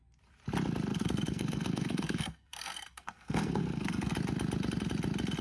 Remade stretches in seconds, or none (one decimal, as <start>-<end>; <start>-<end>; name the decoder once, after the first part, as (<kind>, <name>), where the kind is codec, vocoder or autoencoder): 0.9-4.1 (codec, SNAC)